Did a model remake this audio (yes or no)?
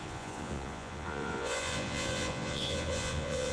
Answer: yes